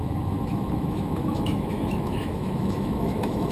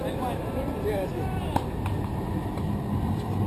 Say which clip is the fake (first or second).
first